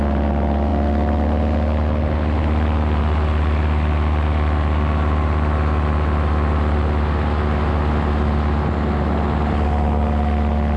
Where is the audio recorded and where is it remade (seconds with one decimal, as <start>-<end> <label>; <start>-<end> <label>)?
0.0-10.8 recorded